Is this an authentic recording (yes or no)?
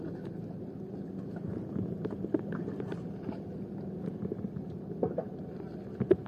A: yes